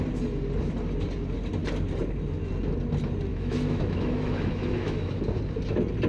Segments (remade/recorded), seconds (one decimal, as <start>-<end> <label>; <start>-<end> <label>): 0.0-3.3 recorded; 3.3-5.2 remade; 5.2-6.1 recorded